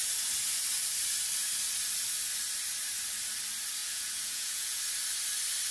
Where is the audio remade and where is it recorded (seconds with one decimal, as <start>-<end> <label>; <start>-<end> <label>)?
0.0-3.8 recorded; 3.8-4.8 remade; 4.8-5.7 recorded